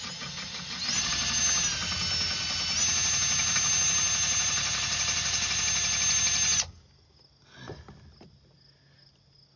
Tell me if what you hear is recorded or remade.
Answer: recorded